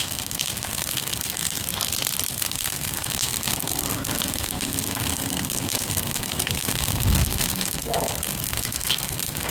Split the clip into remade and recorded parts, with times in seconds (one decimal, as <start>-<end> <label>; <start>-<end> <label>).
0.0-1.7 remade; 1.7-2.3 recorded; 2.3-9.5 remade